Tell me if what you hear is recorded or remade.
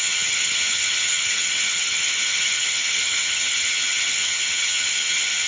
remade